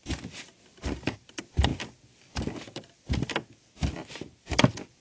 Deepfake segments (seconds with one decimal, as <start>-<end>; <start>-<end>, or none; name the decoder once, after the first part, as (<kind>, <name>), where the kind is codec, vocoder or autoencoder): none